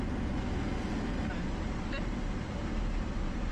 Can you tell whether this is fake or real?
real